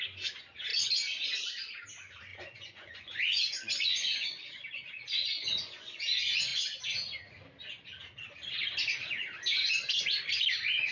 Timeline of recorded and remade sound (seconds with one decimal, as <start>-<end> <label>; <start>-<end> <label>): 0.0-2.3 recorded; 2.3-6.0 remade; 6.0-10.9 recorded